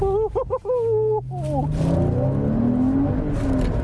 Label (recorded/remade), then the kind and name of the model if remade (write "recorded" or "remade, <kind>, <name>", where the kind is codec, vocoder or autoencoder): recorded